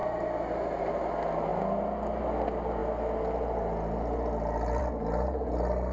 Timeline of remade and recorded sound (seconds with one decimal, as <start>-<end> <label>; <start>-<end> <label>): 0.0-5.9 recorded